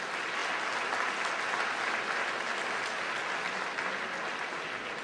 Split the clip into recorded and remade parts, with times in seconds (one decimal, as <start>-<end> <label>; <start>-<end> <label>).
0.0-5.0 recorded

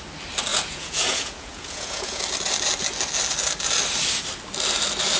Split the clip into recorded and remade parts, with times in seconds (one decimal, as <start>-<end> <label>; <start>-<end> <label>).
0.0-0.5 recorded; 0.5-2.2 remade; 2.2-5.2 recorded

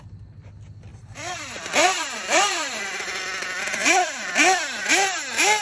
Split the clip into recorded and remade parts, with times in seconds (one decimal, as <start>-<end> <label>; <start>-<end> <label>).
0.0-0.9 recorded; 0.9-3.2 remade; 3.2-3.8 recorded; 3.8-4.3 remade; 4.3-5.6 recorded

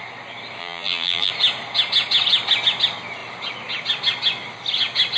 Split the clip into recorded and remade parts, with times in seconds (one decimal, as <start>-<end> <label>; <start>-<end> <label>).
0.0-0.6 recorded; 0.6-1.3 remade; 1.3-5.2 recorded